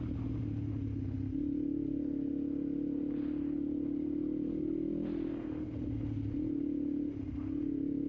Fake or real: real